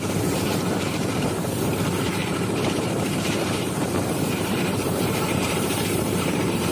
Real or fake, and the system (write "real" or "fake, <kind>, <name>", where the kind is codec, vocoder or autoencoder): fake, vocoder, BigVGAN v2